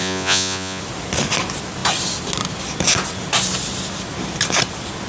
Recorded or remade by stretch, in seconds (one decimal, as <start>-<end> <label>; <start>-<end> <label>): 0.0-0.8 remade; 0.8-5.1 recorded